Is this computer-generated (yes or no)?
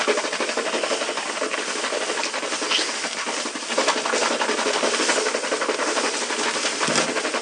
no